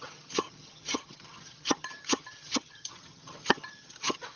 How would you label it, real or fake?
fake